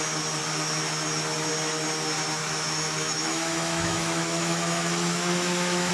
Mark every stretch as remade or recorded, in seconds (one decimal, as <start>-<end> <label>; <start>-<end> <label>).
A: 0.0-2.4 recorded; 2.4-5.9 remade